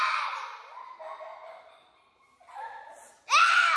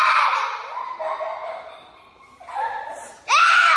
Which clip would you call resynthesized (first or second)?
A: second